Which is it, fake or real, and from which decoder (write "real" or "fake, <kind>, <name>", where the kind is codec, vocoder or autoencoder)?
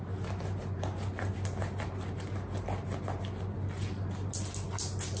real